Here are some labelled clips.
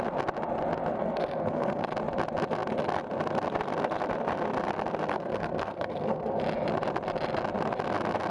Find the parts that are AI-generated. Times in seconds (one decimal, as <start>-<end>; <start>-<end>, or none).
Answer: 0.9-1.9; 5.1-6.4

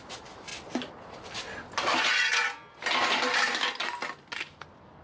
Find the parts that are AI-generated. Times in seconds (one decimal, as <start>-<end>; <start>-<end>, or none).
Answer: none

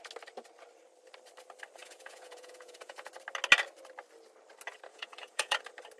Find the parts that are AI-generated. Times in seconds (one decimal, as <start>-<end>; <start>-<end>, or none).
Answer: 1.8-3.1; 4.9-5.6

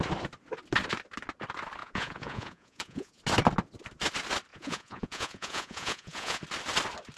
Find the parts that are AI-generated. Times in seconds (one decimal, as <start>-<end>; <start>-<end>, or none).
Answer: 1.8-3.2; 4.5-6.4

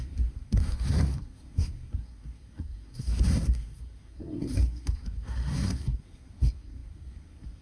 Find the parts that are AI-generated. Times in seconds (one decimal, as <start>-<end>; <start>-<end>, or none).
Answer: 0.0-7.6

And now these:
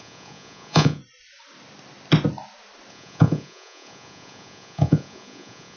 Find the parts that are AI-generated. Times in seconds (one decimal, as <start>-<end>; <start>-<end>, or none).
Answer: 0.0-1.0; 2.9-5.8

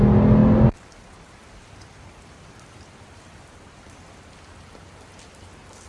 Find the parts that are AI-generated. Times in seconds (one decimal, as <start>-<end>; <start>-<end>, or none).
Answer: 0.4-3.9